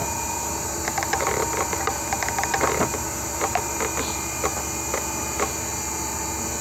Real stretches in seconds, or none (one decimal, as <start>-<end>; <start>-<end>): 3.8-6.6